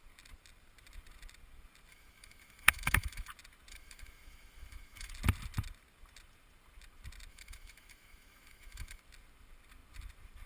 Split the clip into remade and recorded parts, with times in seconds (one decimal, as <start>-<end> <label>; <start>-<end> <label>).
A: 0.0-1.9 recorded; 1.9-3.3 remade; 3.3-3.7 recorded; 3.7-5.1 remade; 5.1-7.3 recorded; 7.3-9.0 remade; 9.0-10.5 recorded